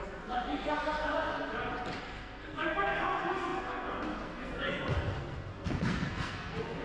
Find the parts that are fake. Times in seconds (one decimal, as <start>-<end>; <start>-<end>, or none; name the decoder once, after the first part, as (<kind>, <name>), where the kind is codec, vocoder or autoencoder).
0.0-1.3 (codec, SNAC); 2.0-6.8